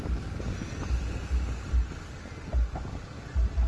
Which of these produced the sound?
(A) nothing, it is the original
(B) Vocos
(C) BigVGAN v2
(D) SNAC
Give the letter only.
A